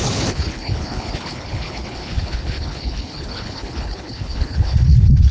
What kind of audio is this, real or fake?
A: fake